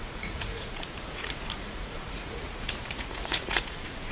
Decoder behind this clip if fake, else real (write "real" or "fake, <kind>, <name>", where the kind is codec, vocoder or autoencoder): fake, vocoder, Vocos